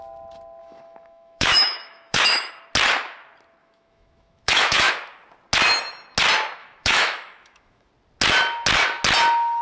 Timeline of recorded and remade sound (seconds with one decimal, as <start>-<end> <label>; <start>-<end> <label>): 0.0-0.6 recorded; 0.6-2.5 remade; 2.5-3.6 recorded; 3.6-4.9 remade; 4.9-6.6 recorded; 6.6-7.9 remade; 7.9-9.6 recorded